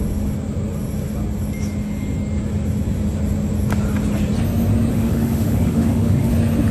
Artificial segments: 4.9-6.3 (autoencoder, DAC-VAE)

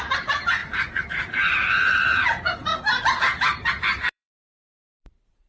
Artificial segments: 0.0-2.7 (vocoder, BigVGAN v2); 3.8-5.5

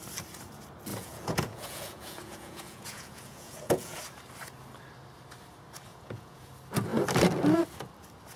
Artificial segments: 0.9-4.0 (vocoder, Vocos); 5.9-6.5

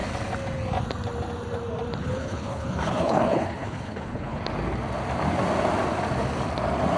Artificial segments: 2.0-4.4 (codec, HILCodec)

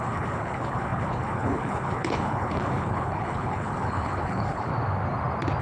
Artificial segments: 0.0-4.7 (codec, HILCodec)

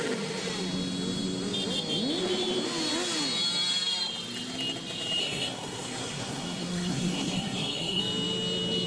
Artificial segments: 5.2-8.0 (codec, SNAC)

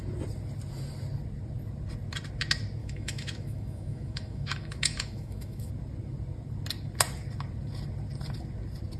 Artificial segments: 2.8-5.7 (autoencoder, DAC-VAE)

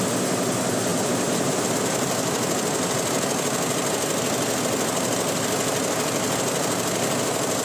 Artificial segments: none